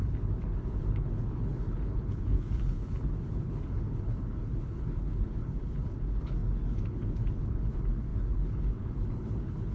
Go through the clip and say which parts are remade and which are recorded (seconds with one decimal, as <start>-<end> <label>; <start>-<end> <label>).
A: 0.0-9.7 remade